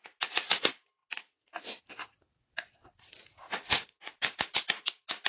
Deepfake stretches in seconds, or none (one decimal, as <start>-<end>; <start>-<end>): 3.3-4.6